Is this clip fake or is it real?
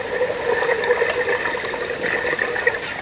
real